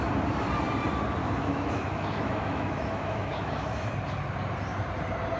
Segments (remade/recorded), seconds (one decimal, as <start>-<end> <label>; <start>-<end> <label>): 0.0-1.2 recorded; 1.2-3.9 remade; 3.9-5.4 recorded